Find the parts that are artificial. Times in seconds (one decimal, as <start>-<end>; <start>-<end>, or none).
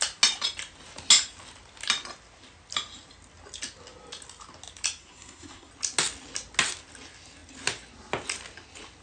5.0-5.7